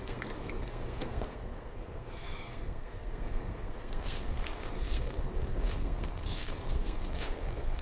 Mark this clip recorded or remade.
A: remade